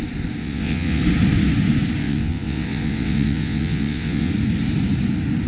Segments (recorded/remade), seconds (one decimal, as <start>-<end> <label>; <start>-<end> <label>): 0.0-0.4 recorded; 0.4-1.0 remade; 1.0-2.0 recorded; 2.0-4.3 remade; 4.3-5.5 recorded